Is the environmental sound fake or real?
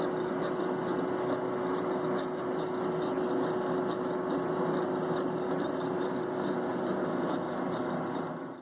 real